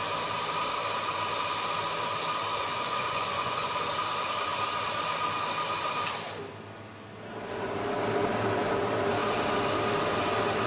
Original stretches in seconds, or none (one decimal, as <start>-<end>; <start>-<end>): 0.0-2.6; 3.7-10.7